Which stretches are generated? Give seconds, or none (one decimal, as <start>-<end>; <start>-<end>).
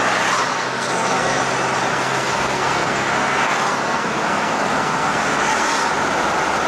0.5-1.4; 1.9-5.9